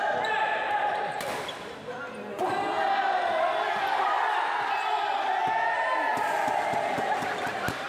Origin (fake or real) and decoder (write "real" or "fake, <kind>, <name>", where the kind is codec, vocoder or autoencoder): real